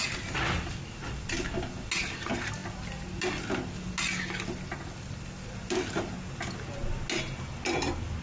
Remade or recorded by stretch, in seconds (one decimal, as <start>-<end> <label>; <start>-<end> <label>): 0.0-8.2 recorded